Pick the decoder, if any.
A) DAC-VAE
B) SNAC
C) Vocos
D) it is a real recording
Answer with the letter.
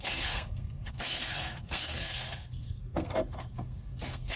B